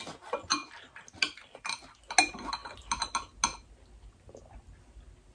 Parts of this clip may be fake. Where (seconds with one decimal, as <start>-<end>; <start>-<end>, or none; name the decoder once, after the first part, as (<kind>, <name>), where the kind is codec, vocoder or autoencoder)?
none